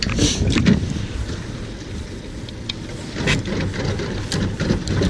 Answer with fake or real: real